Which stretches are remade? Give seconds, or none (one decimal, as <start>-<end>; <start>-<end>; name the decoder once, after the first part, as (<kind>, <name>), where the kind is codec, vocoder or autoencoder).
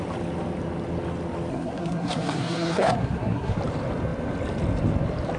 1.5-3.6 (codec, SNAC)